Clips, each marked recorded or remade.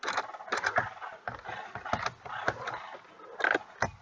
recorded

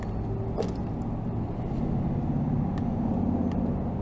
recorded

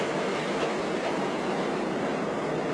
recorded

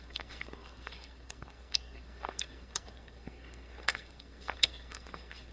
remade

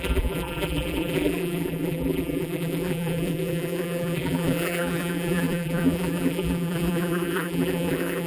remade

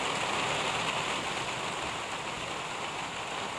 recorded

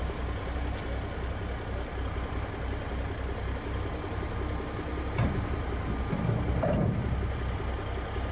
recorded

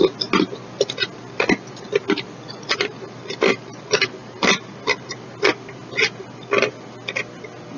recorded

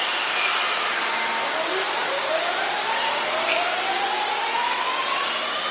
recorded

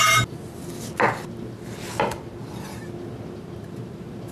recorded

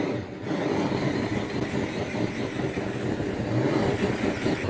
recorded